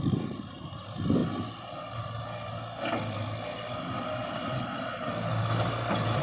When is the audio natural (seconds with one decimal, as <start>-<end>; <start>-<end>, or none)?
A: 1.2-3.8; 5.3-6.2